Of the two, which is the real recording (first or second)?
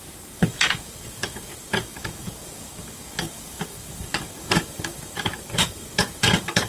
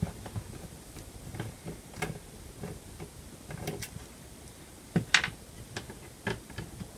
second